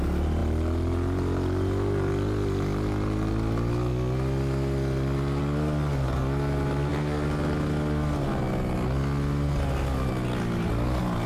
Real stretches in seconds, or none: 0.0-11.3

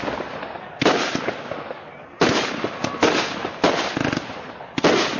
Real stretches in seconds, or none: 0.0-5.2

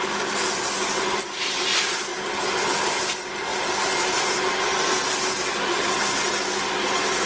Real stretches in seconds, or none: 0.0-3.5; 4.9-7.3

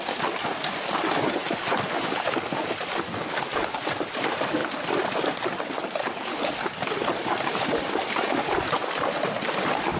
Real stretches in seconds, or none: 1.4-3.8; 4.6-6.4

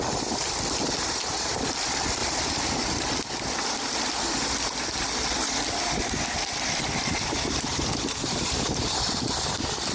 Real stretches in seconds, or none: 0.0-9.9